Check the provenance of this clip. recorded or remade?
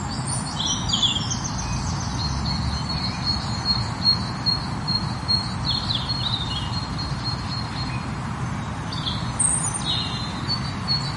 recorded